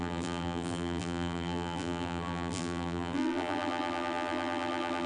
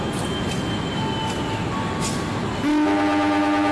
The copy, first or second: first